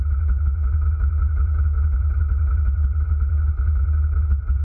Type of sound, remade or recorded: recorded